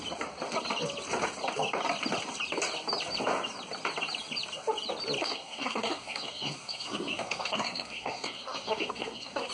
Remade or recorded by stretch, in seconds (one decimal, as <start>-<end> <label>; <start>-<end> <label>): 0.0-5.2 recorded; 5.2-9.5 remade